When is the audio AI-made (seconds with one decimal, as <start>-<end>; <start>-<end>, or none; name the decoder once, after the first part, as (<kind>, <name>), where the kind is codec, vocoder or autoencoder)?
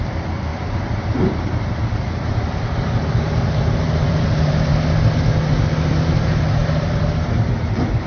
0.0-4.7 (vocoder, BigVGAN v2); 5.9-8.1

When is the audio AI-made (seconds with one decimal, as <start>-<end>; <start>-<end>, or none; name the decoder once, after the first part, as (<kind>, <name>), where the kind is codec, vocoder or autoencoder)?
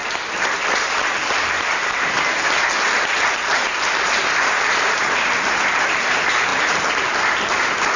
3.0-3.6 (vocoder, BigVGAN v2); 4.3-6.5; 7.1-8.0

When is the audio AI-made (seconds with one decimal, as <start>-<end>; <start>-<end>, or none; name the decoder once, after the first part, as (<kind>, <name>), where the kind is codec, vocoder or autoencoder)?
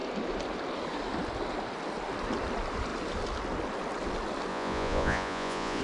4.5-5.8 (vocoder, Vocos)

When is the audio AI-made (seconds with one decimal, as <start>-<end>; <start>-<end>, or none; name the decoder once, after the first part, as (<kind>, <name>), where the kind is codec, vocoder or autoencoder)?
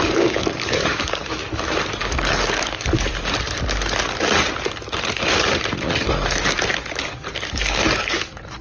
0.0-1.4 (codec, DAC); 2.0-3.1; 7.0-8.6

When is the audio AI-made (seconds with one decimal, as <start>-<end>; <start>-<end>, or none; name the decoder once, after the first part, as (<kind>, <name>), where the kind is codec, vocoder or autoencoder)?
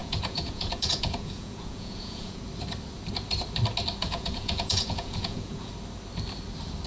0.0-2.4 (vocoder, Vocos); 4.0-5.7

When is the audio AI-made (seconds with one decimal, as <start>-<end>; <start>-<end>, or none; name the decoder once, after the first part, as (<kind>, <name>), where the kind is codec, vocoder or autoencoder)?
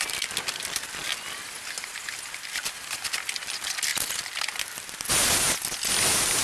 none